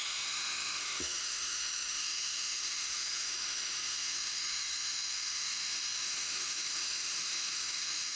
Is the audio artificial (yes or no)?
yes